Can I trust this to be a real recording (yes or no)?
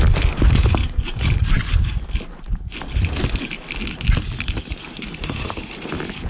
yes